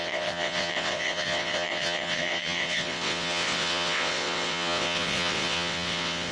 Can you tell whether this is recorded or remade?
remade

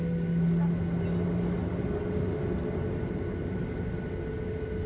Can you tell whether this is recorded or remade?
recorded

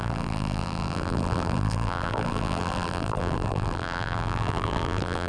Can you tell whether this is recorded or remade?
remade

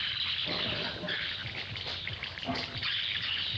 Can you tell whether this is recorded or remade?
recorded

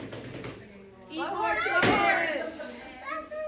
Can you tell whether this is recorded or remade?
recorded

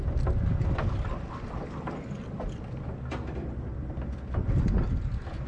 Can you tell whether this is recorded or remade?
recorded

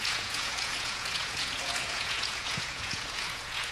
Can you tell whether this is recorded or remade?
remade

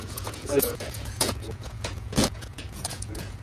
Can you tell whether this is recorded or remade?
remade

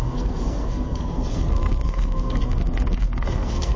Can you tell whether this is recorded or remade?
remade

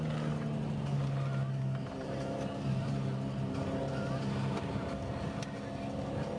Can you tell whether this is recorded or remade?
recorded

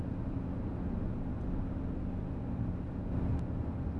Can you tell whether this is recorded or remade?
recorded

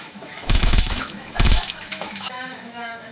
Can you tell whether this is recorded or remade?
remade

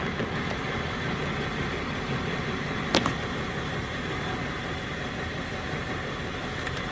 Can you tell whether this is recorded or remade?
recorded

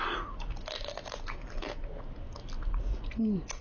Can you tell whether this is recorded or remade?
recorded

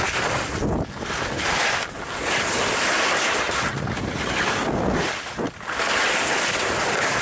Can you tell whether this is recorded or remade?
recorded